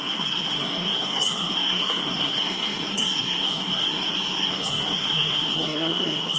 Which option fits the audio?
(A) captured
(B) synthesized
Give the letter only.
B